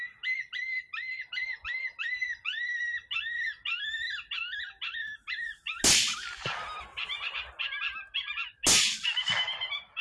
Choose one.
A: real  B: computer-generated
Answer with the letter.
A